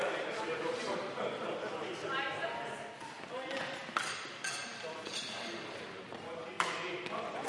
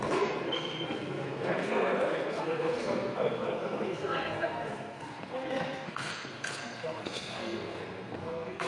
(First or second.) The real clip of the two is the first